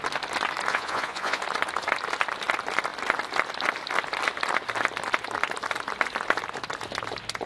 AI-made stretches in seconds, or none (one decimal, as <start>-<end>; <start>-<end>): 0.7-1.4